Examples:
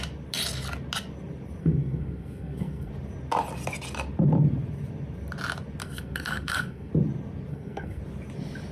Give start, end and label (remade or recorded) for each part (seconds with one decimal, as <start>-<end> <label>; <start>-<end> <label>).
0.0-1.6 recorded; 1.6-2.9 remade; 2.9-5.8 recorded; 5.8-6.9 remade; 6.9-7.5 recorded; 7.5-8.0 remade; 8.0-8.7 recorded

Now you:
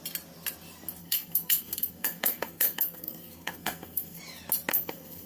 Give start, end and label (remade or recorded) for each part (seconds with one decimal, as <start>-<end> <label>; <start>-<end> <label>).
0.0-1.0 recorded; 1.0-4.2 remade; 4.2-4.7 recorded; 4.7-5.3 remade

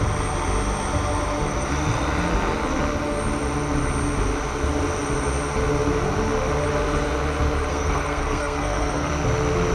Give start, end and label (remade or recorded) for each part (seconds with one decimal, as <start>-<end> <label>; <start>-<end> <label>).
0.0-7.7 recorded; 7.7-9.1 remade; 9.1-9.7 recorded

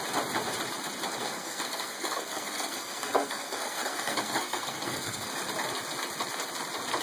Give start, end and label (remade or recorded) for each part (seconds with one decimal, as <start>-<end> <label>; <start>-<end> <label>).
0.0-1.1 recorded; 1.1-5.3 remade; 5.3-7.0 recorded

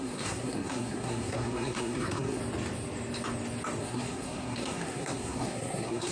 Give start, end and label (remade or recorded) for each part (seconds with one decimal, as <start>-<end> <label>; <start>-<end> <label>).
0.0-2.4 remade; 2.4-3.8 recorded; 3.8-6.1 remade

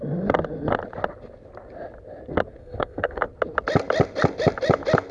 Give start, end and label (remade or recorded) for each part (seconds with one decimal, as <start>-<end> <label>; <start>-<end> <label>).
0.0-2.6 recorded; 2.6-3.2 remade; 3.2-5.1 recorded

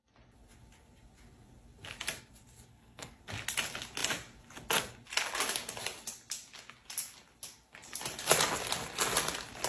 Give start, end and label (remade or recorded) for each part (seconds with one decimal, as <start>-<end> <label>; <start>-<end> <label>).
0.0-2.7 recorded; 2.7-3.2 remade; 3.2-9.7 recorded

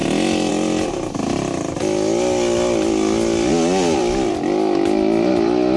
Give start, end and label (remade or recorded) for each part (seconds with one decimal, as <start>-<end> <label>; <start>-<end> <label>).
0.0-5.8 recorded